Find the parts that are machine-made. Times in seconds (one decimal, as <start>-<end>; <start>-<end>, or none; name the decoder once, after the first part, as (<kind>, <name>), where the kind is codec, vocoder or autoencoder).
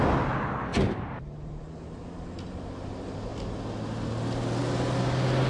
0.7-1.6 (vocoder, BigVGAN v2)